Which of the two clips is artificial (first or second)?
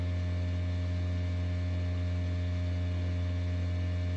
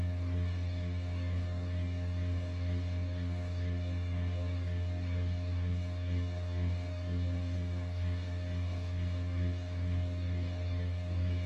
second